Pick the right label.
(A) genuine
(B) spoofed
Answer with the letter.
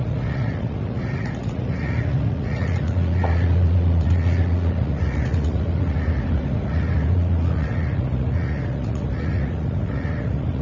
B